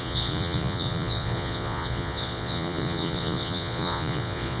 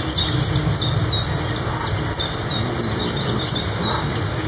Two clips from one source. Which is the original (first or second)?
second